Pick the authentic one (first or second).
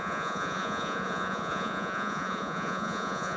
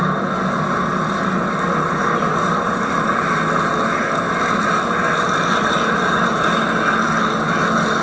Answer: second